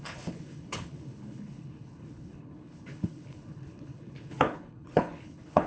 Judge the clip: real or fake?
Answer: fake